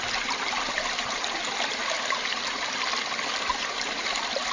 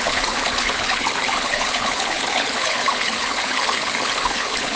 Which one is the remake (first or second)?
second